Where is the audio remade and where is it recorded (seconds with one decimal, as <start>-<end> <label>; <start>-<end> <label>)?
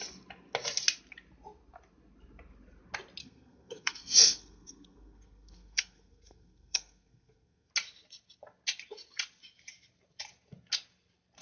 0.0-3.2 recorded; 3.2-7.7 remade; 7.7-11.4 recorded